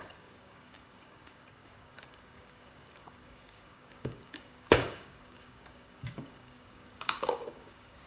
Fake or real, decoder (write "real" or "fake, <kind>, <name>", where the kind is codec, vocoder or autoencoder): fake, codec, DAC